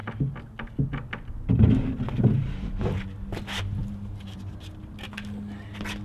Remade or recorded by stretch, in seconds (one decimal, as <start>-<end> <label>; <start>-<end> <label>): 0.0-6.0 recorded